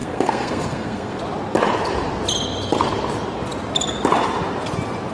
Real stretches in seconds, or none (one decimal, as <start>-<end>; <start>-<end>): 1.2-5.1